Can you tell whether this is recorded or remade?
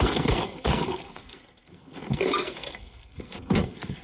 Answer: remade